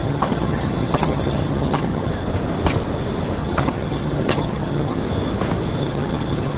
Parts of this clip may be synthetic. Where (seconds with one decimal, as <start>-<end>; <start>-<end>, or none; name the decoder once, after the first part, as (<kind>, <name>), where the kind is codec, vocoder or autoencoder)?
0.0-2.1 (vocoder, HiFi-GAN); 3.4-5.0; 5.8-6.6

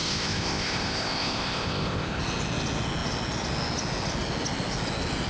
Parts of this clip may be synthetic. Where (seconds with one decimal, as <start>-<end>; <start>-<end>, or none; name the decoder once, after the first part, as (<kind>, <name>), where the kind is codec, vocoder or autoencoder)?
0.0-2.2 (codec, ZipCodec)

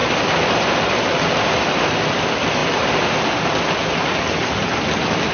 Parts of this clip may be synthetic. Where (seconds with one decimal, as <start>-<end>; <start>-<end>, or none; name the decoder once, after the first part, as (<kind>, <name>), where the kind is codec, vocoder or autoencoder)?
none

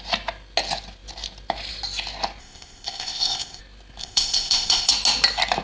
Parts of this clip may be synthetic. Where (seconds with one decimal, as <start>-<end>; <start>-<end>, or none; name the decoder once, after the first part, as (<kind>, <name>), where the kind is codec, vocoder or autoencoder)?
2.4-3.6 (codec, ZipCodec); 4.0-4.9

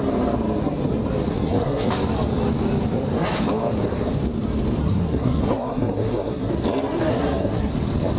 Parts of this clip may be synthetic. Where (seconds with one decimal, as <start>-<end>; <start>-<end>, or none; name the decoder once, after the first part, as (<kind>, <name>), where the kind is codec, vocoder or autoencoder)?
1.3-1.9 (codec, SNAC); 4.8-6.5; 7.1-7.7

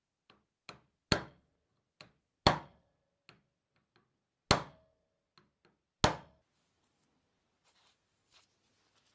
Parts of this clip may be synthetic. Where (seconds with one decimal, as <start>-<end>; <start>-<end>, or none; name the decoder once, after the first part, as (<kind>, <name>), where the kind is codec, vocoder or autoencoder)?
none